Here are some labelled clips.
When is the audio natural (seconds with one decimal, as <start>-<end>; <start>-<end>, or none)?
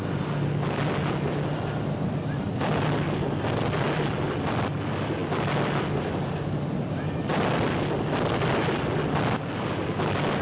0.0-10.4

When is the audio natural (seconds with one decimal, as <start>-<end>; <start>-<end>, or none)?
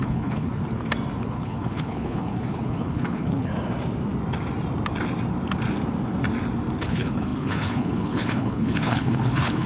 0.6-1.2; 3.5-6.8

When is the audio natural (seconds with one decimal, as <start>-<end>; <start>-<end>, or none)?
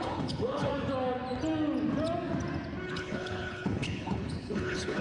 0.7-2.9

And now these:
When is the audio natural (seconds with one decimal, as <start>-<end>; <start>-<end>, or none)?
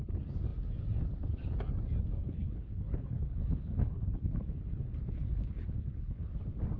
0.0-2.2; 6.3-6.8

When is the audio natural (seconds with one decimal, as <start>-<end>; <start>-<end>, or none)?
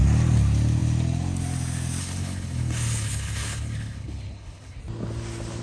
0.0-2.0; 4.8-5.6